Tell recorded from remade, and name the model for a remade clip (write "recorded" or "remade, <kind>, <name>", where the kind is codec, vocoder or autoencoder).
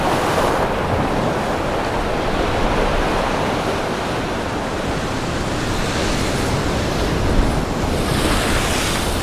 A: recorded